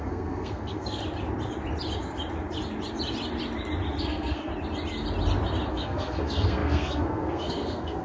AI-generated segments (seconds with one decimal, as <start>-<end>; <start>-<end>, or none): 0.0-1.0; 4.0-4.5; 5.7-8.0